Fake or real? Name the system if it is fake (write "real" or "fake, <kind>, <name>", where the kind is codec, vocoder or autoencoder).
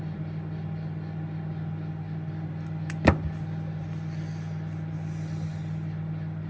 real